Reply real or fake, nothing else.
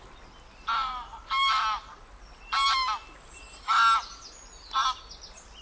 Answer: real